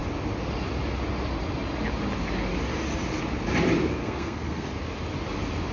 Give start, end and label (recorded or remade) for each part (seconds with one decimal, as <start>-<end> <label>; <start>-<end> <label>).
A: 0.0-4.0 recorded; 4.0-4.7 remade; 4.7-5.7 recorded